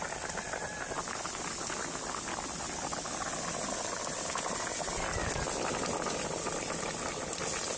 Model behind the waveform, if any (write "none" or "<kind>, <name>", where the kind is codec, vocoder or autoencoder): none